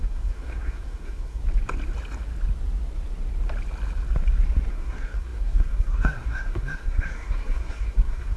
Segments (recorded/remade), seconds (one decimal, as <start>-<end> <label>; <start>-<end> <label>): 0.0-1.4 remade; 1.4-4.7 recorded; 4.7-8.4 remade